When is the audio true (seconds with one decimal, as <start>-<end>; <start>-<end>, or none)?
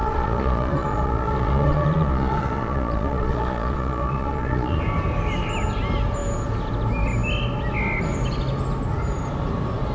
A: 4.8-9.9